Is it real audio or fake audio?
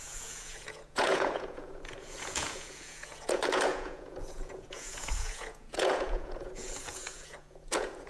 fake